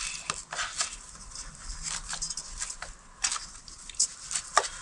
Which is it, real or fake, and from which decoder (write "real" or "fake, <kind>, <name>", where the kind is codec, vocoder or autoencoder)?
real